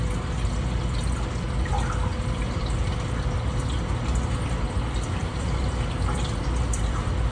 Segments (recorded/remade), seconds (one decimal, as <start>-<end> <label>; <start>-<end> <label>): 0.0-2.1 recorded; 2.1-2.8 remade; 2.8-5.2 recorded; 5.2-6.2 remade; 6.2-7.3 recorded